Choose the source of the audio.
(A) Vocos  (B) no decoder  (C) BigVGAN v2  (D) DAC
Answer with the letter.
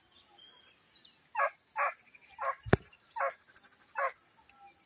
B